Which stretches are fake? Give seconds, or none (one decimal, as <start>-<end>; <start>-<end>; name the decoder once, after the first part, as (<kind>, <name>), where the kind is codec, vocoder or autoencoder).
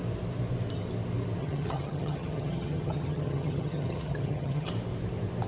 1.4-4.7 (vocoder, HiFi-GAN)